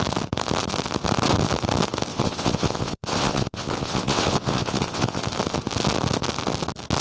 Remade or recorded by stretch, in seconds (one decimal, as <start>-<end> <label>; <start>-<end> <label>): 0.0-2.1 recorded; 2.1-5.2 remade; 5.2-7.0 recorded